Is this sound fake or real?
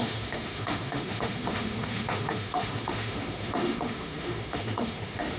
fake